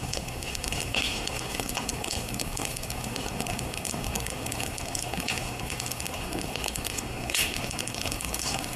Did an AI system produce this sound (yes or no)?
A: yes